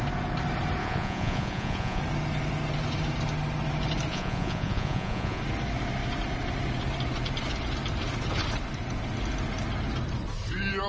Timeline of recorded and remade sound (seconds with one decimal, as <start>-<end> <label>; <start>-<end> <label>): 0.0-0.8 recorded; 0.8-2.0 remade; 2.0-4.1 recorded; 4.1-5.4 remade; 5.4-10.9 recorded